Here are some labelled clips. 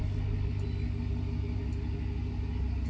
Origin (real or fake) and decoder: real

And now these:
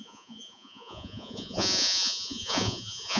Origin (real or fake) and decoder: fake, vocoder, Vocos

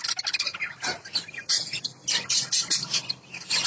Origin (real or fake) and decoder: real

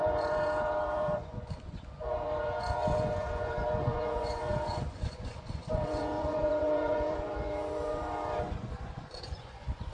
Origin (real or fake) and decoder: fake, vocoder, Vocos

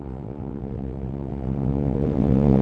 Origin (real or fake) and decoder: fake, vocoder, WaveNeXt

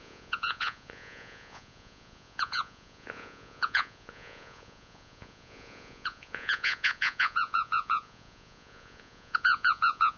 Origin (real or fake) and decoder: fake, vocoder, Vocos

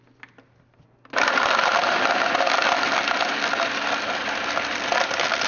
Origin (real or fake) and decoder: real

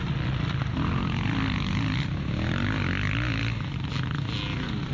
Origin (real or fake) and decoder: real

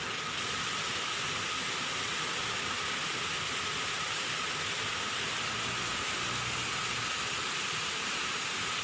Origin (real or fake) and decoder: real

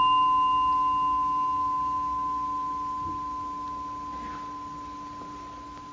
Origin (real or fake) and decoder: real